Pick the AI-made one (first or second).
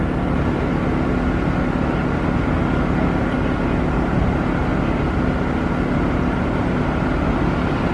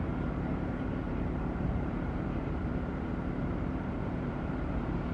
second